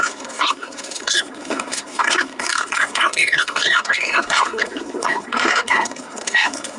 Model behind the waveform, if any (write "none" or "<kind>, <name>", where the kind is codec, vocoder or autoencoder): codec, SNAC